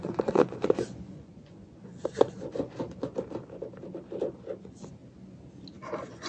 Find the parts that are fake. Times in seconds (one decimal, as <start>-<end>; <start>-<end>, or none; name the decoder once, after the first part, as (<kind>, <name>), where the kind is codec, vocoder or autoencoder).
0.0-2.5 (vocoder, Vocos); 4.6-5.0; 5.7-6.3